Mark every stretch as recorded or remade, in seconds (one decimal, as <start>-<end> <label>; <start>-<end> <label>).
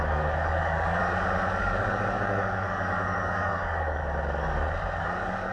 0.0-1.0 remade; 1.0-1.6 recorded; 1.6-4.0 remade; 4.0-5.0 recorded; 5.0-5.5 remade